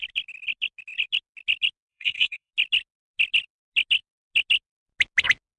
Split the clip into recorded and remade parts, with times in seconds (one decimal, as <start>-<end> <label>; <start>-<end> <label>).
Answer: 0.0-1.9 recorded; 1.9-2.5 remade; 2.5-5.6 recorded